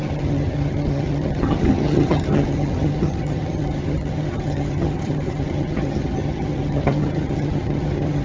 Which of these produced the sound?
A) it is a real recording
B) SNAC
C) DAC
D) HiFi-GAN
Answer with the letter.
D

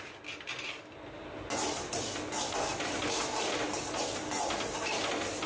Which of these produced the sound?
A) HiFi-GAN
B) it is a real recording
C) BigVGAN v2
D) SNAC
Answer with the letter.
B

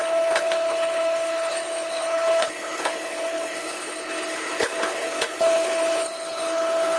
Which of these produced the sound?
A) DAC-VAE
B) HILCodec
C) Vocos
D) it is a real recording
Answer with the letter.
B